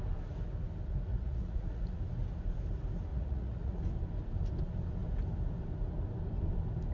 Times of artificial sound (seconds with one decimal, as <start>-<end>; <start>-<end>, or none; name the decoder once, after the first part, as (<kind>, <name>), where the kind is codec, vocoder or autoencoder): 1.1-2.0 (vocoder, Vocos); 3.1-3.8